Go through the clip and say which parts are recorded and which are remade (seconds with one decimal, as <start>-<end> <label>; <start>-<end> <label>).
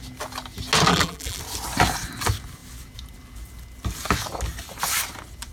0.0-0.9 recorded; 0.9-1.4 remade; 1.4-5.5 recorded